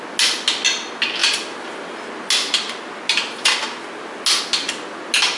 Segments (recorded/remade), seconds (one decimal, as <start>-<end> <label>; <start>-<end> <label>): 0.0-5.4 recorded